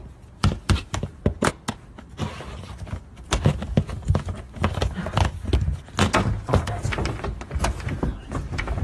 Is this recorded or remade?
recorded